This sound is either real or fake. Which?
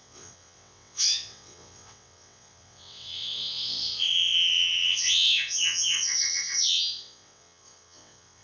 fake